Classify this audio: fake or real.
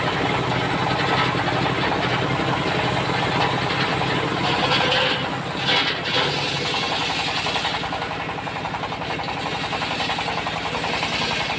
real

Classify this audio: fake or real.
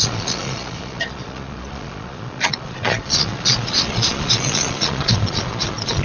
fake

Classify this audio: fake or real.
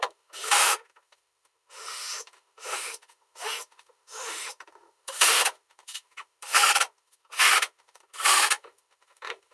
fake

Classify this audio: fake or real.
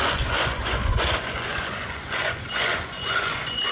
fake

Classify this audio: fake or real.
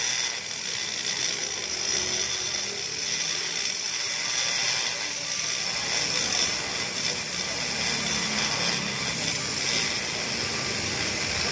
real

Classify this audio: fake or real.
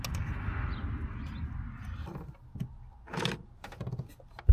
real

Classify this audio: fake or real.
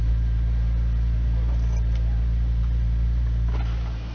real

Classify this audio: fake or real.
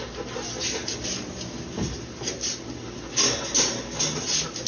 real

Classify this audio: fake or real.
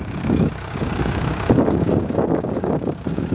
fake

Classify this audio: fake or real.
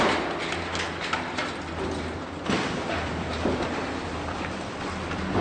fake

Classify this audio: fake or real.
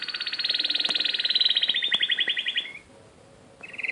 real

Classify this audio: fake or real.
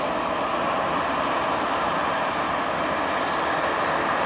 real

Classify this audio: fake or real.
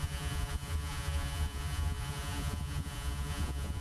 fake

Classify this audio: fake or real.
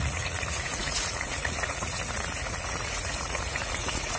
fake